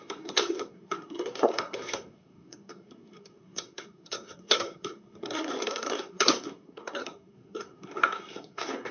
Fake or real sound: fake